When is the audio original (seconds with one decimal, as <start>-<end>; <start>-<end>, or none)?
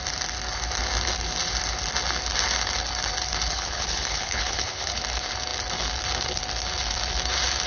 0.0-3.5; 5.0-7.7